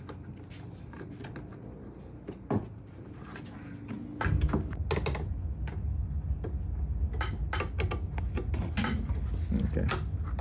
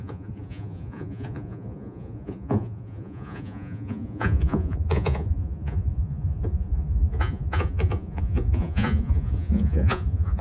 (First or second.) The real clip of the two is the first